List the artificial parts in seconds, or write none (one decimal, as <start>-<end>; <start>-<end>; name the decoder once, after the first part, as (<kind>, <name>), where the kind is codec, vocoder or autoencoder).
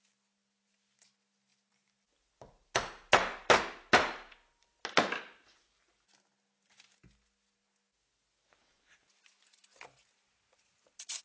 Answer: none